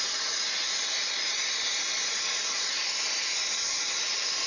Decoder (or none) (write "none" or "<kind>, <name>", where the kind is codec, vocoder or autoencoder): none